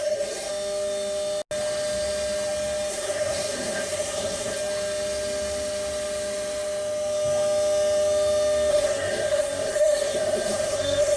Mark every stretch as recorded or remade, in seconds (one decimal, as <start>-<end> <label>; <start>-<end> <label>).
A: 0.0-0.5 remade; 0.5-2.9 recorded; 2.9-4.6 remade; 4.6-8.7 recorded; 8.7-11.2 remade